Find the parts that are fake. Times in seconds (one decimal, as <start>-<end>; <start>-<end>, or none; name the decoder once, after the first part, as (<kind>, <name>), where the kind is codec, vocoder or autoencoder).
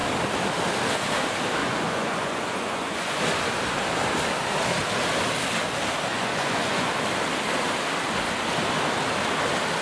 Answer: 1.6-3.2 (vocoder, Vocos); 6.1-6.9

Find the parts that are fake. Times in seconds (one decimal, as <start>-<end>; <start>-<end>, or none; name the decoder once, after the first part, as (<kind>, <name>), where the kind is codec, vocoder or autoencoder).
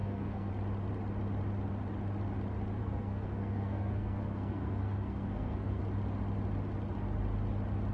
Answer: 0.0-0.5 (codec, SNAC); 2.8-5.8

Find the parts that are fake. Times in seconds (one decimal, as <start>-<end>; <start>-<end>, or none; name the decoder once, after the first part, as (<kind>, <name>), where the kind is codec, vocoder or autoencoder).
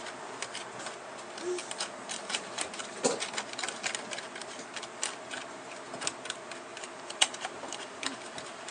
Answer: 1.6-2.8 (vocoder, BigVGAN v2); 6.7-8.7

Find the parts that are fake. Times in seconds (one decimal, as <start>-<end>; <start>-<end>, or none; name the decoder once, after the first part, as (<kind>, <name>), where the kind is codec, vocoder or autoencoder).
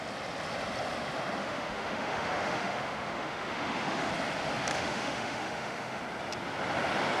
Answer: 1.4-4.1 (autoencoder, DAC-VAE); 4.7-6.0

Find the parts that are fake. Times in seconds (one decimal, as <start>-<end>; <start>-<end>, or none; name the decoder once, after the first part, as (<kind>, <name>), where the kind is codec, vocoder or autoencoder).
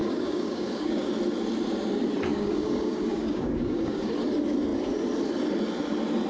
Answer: 0.0-1.1 (codec, DAC); 2.3-4.1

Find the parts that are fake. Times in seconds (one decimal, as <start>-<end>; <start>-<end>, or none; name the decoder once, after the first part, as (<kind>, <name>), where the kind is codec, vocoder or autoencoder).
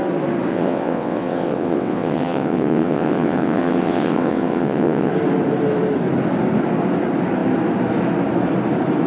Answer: 0.5-5.1 (vocoder, WaveNeXt)